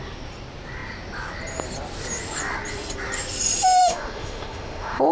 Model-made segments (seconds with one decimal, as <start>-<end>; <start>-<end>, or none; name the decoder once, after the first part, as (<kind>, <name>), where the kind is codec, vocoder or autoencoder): 3.8-5.1 (autoencoder, DAC-VAE)